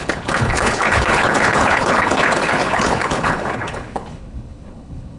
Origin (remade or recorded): remade